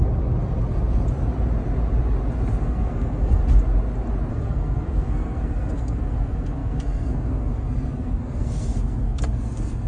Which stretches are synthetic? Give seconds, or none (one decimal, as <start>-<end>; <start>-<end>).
2.6-3.4; 4.3-9.9